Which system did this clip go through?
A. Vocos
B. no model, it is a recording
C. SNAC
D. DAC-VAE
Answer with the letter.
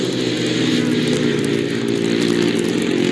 B